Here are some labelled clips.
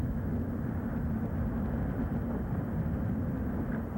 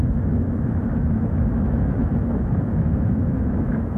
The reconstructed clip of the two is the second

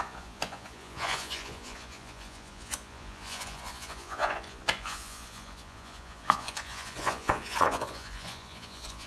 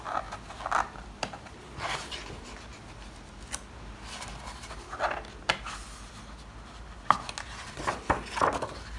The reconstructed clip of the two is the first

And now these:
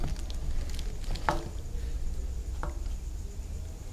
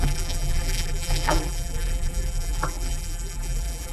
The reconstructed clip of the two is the second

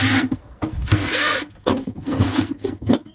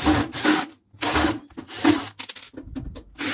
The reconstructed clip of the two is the first